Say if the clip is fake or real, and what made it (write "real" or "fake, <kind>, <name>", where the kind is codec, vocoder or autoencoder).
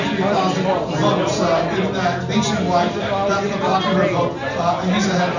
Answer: real